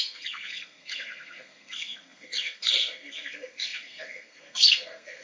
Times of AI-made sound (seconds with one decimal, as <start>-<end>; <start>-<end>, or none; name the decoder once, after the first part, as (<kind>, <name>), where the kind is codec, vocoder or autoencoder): 0.0-5.2 (codec, SNAC)